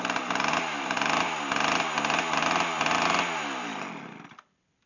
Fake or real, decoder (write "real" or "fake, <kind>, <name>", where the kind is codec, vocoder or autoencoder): real